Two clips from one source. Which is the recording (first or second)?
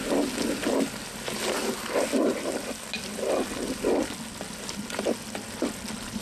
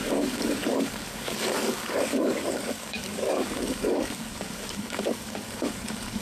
first